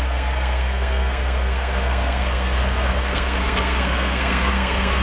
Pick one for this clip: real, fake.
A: fake